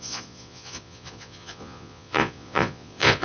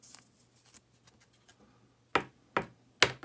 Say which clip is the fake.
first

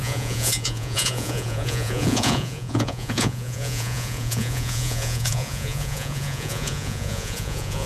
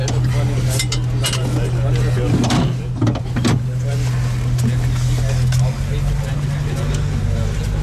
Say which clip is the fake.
first